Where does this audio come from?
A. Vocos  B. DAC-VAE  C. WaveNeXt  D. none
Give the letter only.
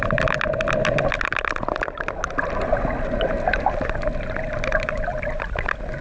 D